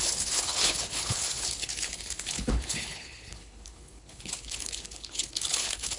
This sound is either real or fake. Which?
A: fake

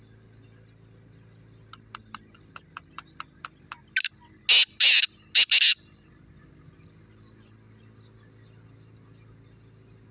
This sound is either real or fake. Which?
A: real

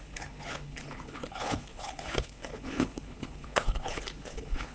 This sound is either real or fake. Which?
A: fake